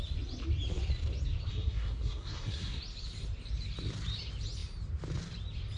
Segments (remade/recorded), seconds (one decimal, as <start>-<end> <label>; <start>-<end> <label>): 0.0-1.5 recorded; 1.5-2.8 remade; 2.8-5.8 recorded